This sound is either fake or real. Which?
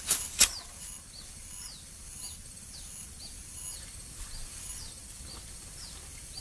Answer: real